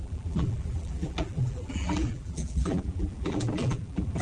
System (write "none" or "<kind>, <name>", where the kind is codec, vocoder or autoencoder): vocoder, BigVGAN v2